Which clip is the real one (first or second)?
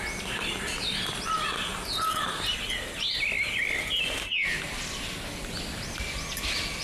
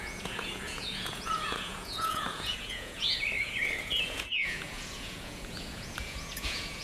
first